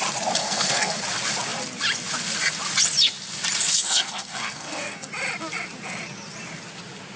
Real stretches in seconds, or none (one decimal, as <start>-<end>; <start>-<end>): 0.0-0.4; 1.0-3.7; 5.1-7.2